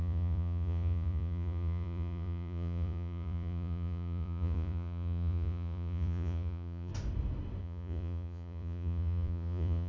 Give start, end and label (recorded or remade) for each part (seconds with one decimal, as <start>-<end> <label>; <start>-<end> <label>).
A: 0.0-6.9 remade; 6.9-7.6 recorded; 7.6-9.9 remade